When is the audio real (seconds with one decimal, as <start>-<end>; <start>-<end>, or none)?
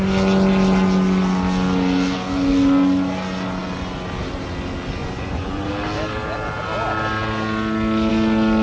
0.0-5.0; 5.7-8.6